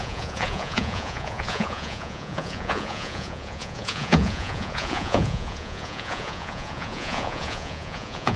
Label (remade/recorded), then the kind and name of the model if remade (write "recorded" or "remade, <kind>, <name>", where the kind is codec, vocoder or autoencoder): remade, vocoder, Vocos